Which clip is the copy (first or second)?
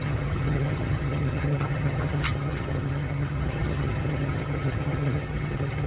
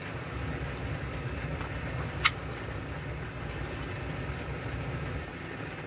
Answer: first